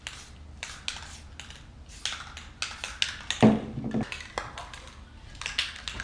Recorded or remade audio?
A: recorded